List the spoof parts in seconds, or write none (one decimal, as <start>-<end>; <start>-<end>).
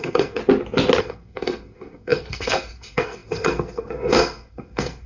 0.0-0.4; 1.0-5.1